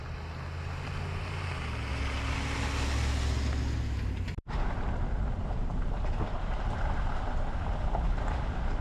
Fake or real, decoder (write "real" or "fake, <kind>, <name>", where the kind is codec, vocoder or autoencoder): real